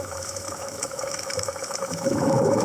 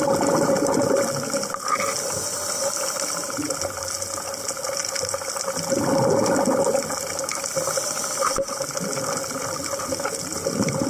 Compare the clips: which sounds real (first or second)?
second